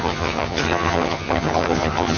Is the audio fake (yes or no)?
yes